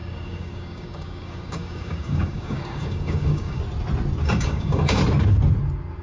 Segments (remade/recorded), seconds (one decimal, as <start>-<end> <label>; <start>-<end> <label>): 0.0-3.6 remade; 3.6-4.2 recorded; 4.2-5.0 remade; 5.0-6.0 recorded